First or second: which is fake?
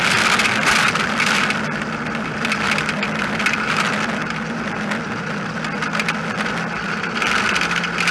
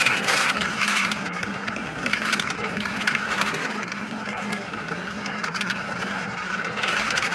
second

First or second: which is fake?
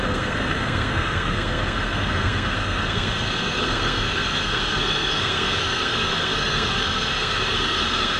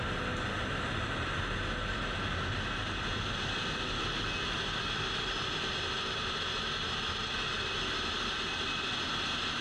first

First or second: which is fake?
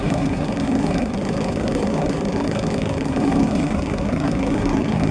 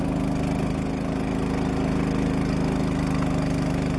first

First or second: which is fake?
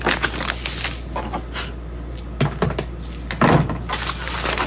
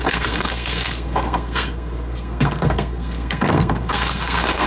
second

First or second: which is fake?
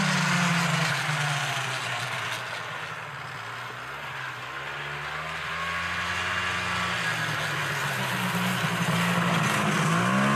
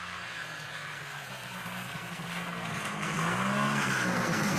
second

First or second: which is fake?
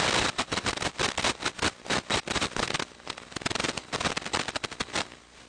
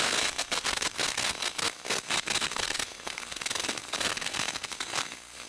second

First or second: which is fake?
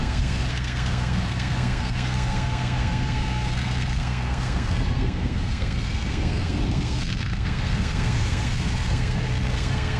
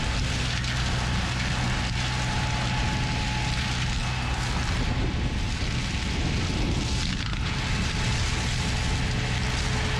first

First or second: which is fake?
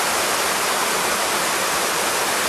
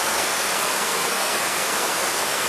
second